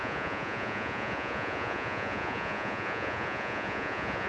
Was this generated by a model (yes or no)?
yes